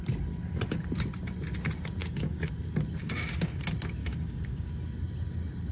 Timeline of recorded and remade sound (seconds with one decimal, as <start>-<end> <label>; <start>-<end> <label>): 0.0-2.0 recorded; 2.0-2.5 remade; 2.5-3.0 recorded; 3.0-3.6 remade; 3.6-4.0 recorded; 4.0-4.7 remade; 4.7-5.7 recorded